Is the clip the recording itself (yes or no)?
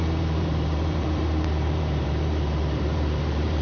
no